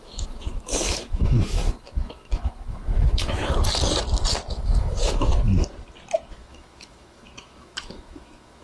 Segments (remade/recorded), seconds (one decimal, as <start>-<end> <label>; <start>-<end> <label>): 0.0-3.4 remade; 3.4-4.5 recorded; 4.5-5.3 remade; 5.3-6.3 recorded; 6.3-8.6 remade